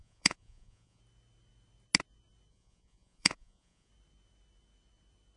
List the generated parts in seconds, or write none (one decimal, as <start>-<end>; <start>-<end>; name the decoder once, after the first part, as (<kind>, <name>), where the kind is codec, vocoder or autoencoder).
0.0-1.0 (vocoder, Vocos); 2.5-3.9